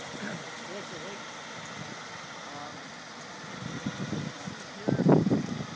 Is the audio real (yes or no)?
yes